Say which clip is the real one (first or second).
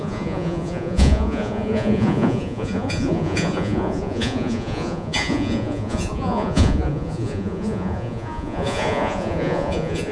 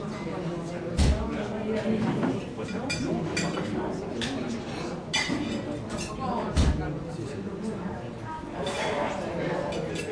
second